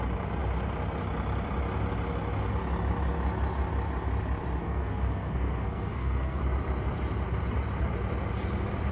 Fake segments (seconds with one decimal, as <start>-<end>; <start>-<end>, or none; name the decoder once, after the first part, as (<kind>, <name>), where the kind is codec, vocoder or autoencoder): 4.6-6.4 (codec, SNAC)

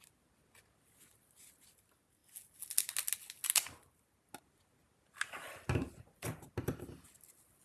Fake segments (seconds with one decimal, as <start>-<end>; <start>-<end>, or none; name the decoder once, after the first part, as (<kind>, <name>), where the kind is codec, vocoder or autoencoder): none

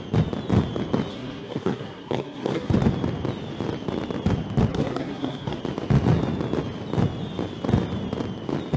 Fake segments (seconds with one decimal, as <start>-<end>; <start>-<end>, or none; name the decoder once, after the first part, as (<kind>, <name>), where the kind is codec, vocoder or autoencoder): 1.1-2.7 (codec, SNAC); 4.7-5.6

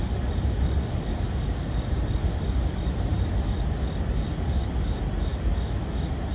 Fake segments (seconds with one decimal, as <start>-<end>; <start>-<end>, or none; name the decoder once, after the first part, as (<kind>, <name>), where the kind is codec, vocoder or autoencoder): none

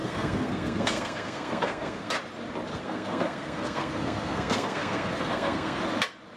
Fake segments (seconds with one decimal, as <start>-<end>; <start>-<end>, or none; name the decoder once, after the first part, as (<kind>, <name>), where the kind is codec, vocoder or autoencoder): 0.0-2.1 (codec, SNAC); 2.7-5.8

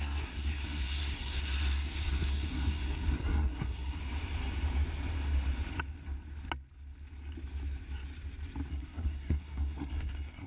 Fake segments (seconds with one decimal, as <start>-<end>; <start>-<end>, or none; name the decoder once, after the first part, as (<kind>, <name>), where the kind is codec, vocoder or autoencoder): 0.0-4.0 (codec, SNAC); 8.7-10.5

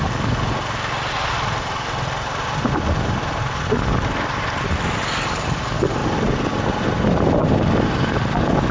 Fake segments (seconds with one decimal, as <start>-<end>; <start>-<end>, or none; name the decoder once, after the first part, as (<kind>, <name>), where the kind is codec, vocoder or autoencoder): none